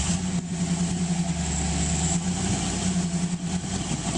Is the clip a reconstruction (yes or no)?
no